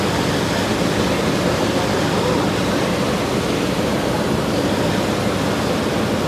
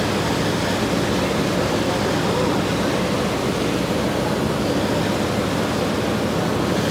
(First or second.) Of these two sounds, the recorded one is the second